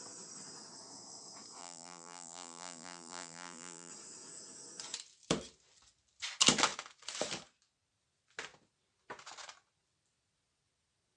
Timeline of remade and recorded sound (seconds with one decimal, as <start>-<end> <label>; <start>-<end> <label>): 0.0-1.6 recorded; 1.6-3.9 remade; 3.9-11.2 recorded